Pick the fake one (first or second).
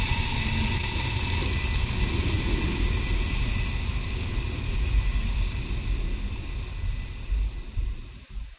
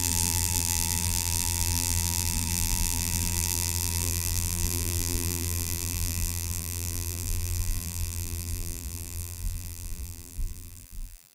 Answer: second